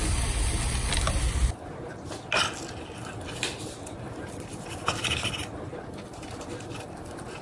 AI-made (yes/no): no